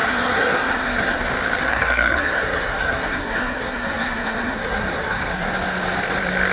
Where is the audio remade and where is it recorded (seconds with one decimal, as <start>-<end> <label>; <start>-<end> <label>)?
0.0-1.2 remade; 1.2-1.6 recorded; 1.6-5.5 remade; 5.5-6.5 recorded